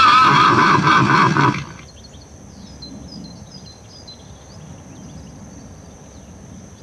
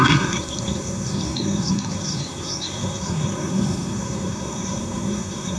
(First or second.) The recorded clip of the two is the first